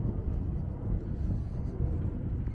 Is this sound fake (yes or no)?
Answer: no